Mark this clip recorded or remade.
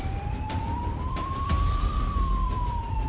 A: remade